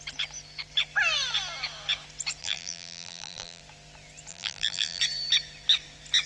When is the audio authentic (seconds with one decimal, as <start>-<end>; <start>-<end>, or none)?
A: 0.0-2.4; 3.6-4.3; 5.0-6.3